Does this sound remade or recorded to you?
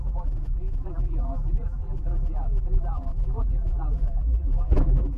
remade